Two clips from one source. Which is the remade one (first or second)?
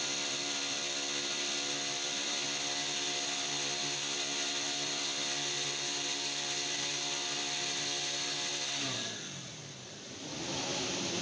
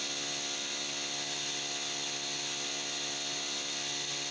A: first